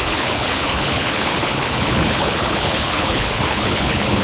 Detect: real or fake fake